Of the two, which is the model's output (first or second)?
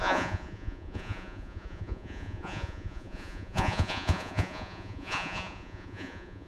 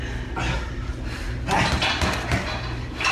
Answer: first